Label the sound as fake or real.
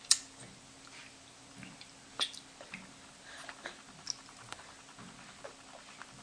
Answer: real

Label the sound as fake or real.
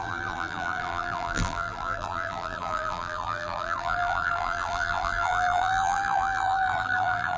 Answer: fake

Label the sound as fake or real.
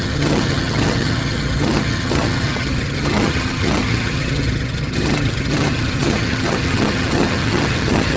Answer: fake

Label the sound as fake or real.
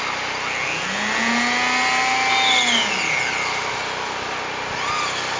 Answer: real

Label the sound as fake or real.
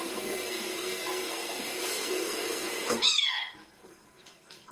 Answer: fake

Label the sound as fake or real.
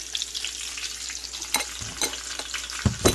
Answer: real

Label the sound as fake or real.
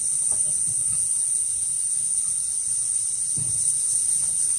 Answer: real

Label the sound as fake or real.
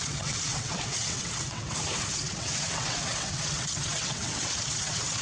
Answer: fake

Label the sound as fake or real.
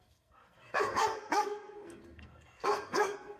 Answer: fake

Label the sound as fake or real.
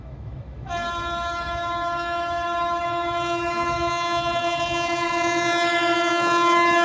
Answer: fake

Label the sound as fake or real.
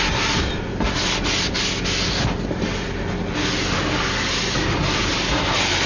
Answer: real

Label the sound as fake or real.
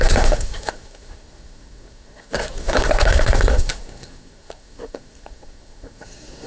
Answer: fake